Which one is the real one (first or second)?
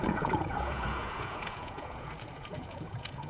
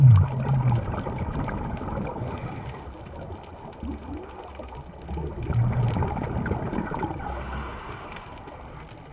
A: second